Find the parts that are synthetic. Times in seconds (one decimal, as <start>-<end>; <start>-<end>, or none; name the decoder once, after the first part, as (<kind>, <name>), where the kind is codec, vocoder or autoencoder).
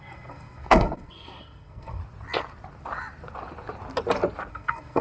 0.0-2.0 (codec, SNAC); 4.5-5.0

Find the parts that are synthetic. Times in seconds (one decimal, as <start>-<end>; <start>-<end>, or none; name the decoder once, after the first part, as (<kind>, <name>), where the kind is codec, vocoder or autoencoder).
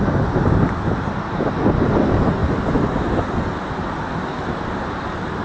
none